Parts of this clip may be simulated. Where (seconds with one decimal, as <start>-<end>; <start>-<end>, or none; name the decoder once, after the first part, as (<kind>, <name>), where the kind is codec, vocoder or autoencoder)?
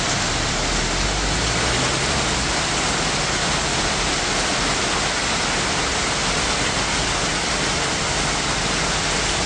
none